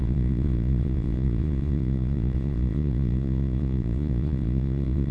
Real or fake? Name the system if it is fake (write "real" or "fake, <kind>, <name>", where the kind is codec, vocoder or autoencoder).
fake, vocoder, Vocos